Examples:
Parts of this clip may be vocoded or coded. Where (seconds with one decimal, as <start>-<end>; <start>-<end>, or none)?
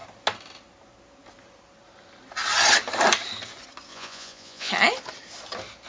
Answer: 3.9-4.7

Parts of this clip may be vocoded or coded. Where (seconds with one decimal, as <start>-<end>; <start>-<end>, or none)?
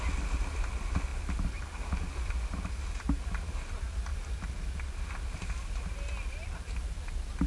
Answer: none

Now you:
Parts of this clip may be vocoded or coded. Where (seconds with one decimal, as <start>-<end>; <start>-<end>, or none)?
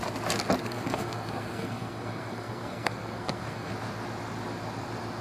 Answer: 0.6-3.7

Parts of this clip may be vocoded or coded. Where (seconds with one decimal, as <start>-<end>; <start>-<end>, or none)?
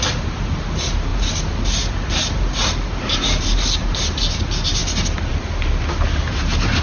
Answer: none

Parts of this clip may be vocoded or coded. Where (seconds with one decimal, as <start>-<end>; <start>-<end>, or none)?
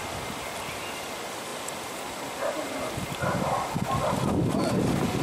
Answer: none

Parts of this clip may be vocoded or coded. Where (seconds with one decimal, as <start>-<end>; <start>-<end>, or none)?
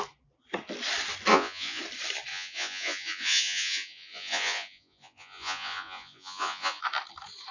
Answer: 1.3-1.8; 2.3-6.8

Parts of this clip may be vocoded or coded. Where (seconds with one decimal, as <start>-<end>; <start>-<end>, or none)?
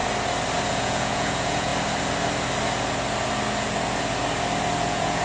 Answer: 0.7-1.7; 4.8-5.2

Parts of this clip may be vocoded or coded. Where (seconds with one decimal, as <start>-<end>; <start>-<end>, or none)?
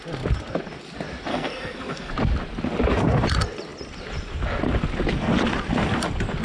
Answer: 1.3-2.1